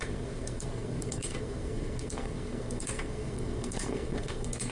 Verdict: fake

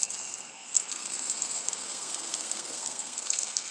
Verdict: fake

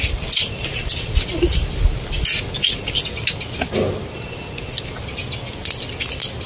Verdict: real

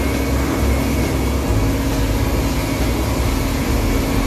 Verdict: real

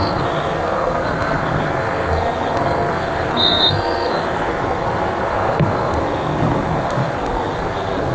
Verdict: fake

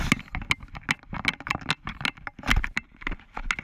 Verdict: real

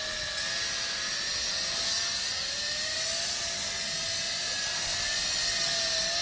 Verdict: real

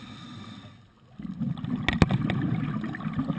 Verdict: real